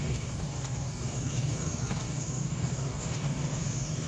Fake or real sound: fake